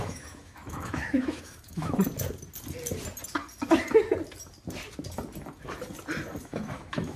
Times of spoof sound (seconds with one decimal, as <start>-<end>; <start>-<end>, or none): 0.0-2.1; 6.4-7.2